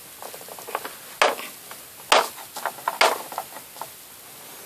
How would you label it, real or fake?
real